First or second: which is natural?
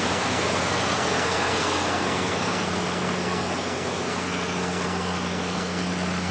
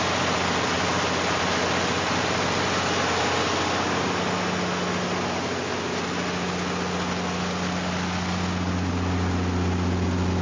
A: second